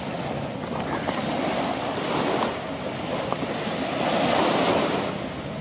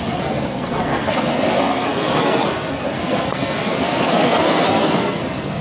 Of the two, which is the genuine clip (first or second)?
first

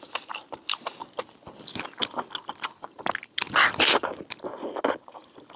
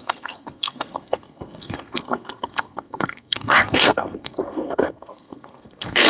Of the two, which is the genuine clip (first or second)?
first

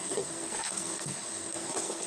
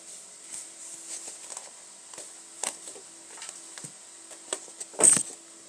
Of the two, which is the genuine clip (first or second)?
second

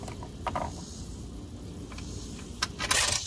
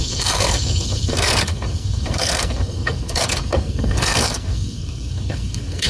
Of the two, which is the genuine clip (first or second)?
first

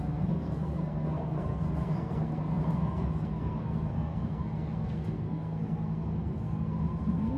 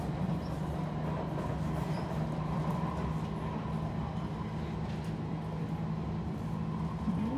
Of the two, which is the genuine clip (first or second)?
second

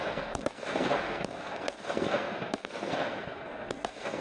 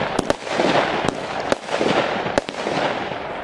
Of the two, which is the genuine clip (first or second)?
second